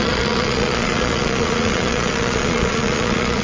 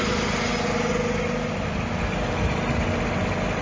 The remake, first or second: first